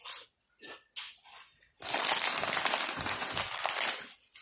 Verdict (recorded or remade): recorded